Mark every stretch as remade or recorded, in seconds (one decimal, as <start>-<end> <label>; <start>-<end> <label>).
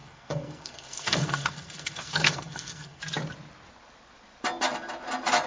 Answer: 0.0-3.0 remade; 3.0-5.5 recorded